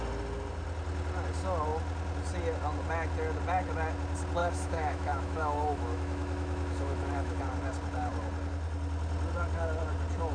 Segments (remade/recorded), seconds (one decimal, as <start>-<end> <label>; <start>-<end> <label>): 0.0-4.4 recorded; 4.4-7.4 remade; 7.4-10.3 recorded